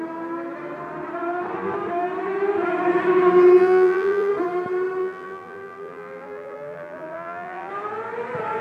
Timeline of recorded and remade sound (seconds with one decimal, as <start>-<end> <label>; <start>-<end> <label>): 0.0-3.6 recorded; 3.6-4.3 remade; 4.3-5.0 recorded; 5.0-7.7 remade; 7.7-8.6 recorded